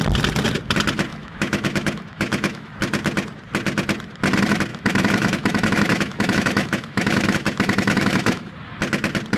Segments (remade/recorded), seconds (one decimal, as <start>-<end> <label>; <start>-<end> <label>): 0.0-1.1 recorded; 1.1-2.7 remade; 2.7-4.7 recorded; 4.7-8.5 remade; 8.5-9.4 recorded